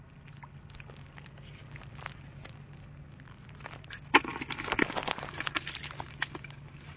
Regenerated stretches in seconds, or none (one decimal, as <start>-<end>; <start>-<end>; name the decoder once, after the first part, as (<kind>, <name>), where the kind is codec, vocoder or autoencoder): none